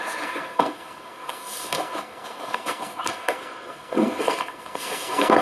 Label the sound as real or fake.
fake